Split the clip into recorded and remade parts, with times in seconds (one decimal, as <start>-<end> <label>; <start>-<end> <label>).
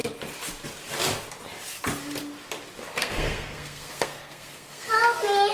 0.0-2.9 recorded; 2.9-4.9 remade; 4.9-5.5 recorded